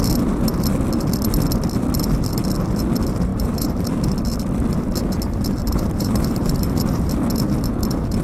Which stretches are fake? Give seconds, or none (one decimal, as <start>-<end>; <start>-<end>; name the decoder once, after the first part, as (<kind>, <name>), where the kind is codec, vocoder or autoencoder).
3.3-3.9 (vocoder, BigVGAN v2); 5.6-7.1